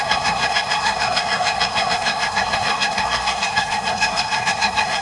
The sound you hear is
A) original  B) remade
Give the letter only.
B